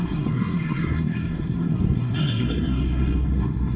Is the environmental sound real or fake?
fake